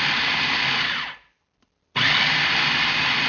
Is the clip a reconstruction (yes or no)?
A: no